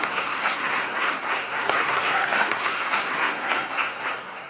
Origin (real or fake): fake